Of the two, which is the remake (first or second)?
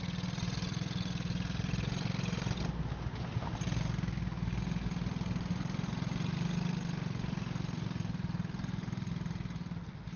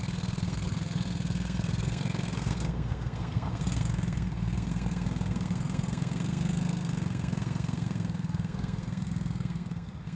second